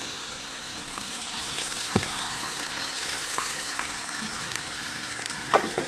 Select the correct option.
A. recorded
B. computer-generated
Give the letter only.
B